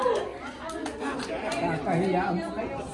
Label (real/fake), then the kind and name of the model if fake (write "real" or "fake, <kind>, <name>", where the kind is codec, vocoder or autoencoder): real